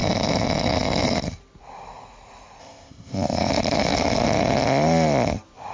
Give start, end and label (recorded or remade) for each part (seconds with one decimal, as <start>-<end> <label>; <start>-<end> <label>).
0.0-2.6 recorded; 2.6-3.5 remade; 3.5-5.7 recorded